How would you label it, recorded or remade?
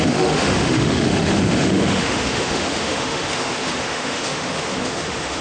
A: remade